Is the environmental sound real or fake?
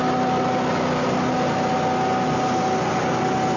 real